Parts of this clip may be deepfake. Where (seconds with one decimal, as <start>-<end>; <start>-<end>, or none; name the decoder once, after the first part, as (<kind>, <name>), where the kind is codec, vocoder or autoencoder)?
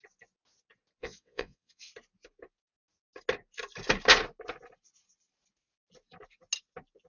1.0-1.9 (vocoder, WaveNeXt)